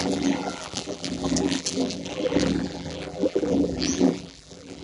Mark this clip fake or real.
fake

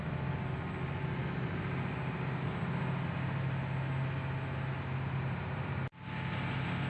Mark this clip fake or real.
real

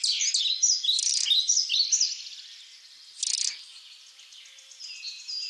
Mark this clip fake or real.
real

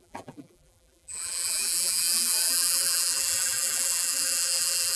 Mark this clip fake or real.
fake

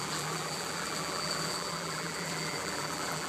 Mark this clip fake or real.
fake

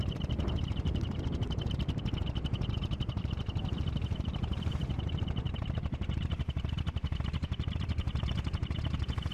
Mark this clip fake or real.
fake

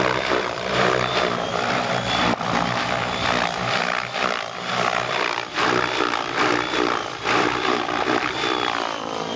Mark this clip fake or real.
fake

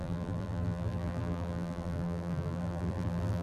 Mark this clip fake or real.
fake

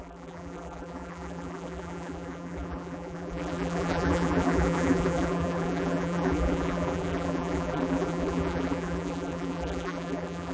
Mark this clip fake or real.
fake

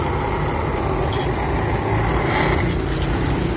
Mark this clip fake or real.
real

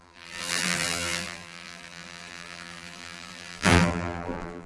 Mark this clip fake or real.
fake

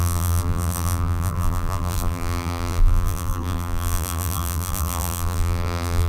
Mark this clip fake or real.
fake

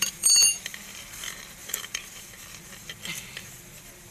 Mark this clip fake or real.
fake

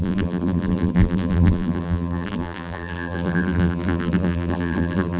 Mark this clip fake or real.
fake